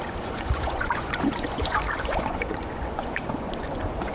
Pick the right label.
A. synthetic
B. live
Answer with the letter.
A